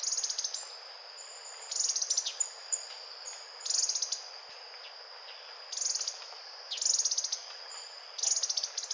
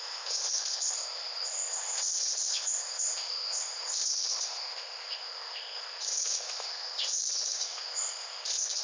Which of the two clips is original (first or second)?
first